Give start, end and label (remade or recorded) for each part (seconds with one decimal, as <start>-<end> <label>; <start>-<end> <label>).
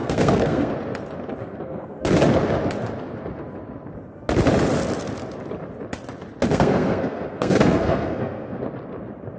0.0-0.7 remade; 0.7-1.4 recorded; 1.4-2.1 remade; 2.1-6.5 recorded; 6.5-8.6 remade; 8.6-9.4 recorded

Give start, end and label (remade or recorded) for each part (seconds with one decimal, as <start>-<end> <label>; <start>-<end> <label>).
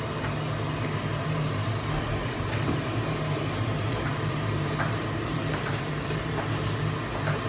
0.0-1.1 recorded; 1.1-1.7 remade; 1.7-2.2 recorded; 2.2-6.3 remade; 6.3-7.5 recorded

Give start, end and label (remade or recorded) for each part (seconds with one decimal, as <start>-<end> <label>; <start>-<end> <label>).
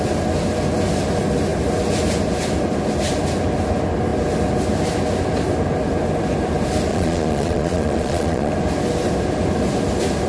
0.0-6.9 recorded; 6.9-8.5 remade; 8.5-10.3 recorded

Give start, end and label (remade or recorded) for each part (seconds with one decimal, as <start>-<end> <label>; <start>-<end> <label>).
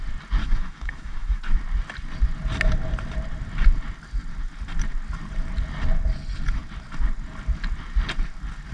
0.0-0.4 recorded; 0.4-1.4 remade; 1.4-8.7 recorded